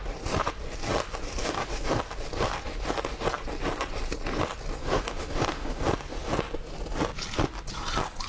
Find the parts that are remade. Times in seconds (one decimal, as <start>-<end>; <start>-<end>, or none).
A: 1.4-2.0; 4.8-5.8